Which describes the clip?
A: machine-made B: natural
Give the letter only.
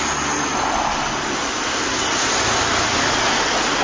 B